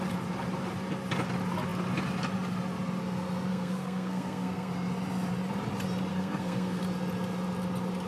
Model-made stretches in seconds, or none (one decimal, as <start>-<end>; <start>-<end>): 3.5-4.7; 6.1-6.8